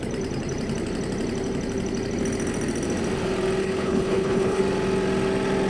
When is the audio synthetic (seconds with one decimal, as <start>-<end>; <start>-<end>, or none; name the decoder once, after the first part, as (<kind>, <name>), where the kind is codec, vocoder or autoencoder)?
3.6-4.6 (codec, HILCodec)

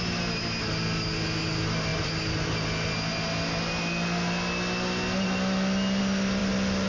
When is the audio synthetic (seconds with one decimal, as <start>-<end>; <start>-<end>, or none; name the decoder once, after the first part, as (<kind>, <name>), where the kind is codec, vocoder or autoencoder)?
none

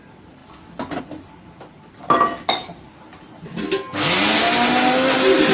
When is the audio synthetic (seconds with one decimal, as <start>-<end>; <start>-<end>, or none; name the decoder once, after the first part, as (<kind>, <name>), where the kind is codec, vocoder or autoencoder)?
none

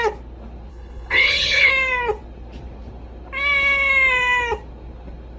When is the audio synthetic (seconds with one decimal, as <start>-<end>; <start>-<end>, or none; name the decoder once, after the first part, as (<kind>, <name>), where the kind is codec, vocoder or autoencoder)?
0.7-1.7 (codec, HILCodec)

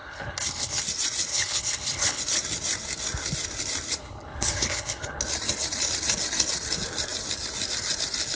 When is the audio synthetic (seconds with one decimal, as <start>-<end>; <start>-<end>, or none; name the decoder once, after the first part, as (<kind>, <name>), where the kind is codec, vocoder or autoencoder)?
0.0-0.8 (codec, HILCodec); 1.3-2.2; 4.0-5.2